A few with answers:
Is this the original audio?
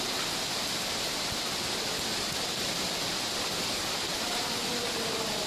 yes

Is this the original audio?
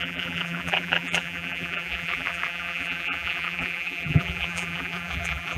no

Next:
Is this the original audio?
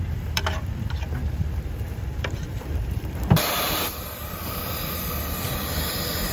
no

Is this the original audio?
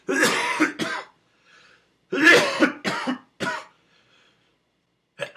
yes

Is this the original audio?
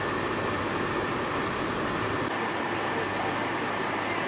yes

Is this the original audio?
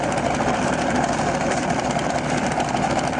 no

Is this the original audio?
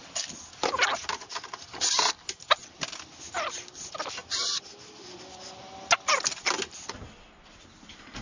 yes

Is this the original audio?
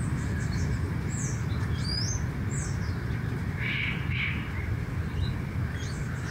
no